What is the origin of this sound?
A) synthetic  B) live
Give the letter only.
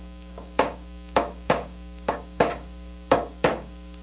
A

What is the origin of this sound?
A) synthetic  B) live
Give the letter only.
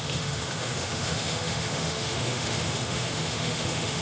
A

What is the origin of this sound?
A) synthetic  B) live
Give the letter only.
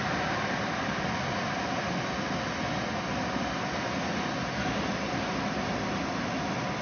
B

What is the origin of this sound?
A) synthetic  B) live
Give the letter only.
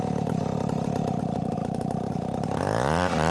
B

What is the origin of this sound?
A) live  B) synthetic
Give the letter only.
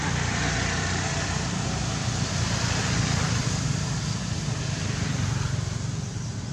B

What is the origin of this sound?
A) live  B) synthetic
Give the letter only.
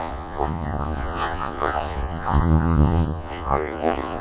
B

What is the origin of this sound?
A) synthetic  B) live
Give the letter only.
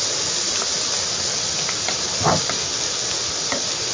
B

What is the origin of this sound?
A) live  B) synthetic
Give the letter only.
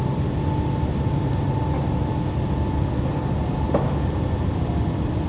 A